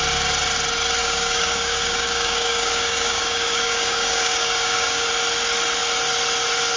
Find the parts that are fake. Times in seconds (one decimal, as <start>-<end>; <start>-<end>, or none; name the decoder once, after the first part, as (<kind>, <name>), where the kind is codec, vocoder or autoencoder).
1.0-5.1 (codec, DAC)